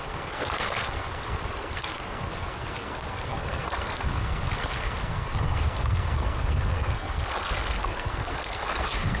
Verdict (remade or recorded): remade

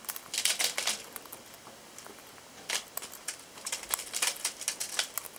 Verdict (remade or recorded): recorded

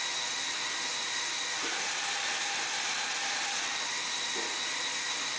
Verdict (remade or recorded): recorded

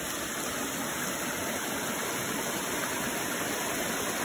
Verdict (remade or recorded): recorded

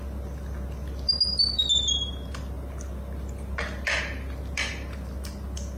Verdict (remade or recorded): recorded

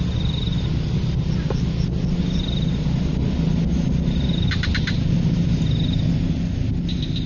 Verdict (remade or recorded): recorded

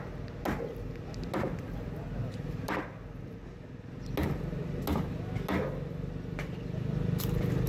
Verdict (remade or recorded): recorded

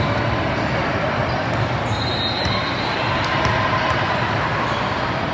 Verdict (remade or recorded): recorded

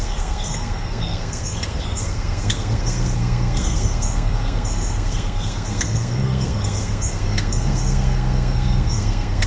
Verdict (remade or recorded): remade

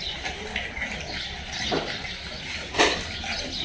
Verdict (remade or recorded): recorded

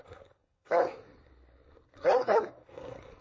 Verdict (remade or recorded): remade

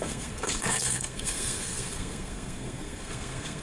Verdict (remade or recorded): remade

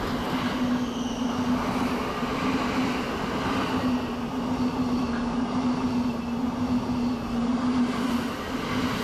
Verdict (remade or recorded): recorded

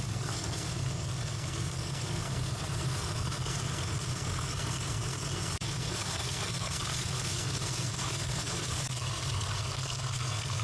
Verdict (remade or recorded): remade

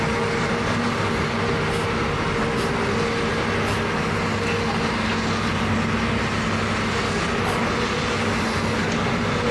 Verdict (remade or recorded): recorded